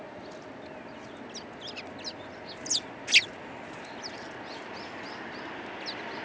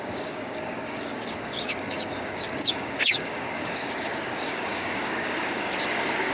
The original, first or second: first